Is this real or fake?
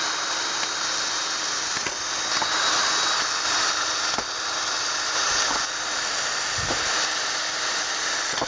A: real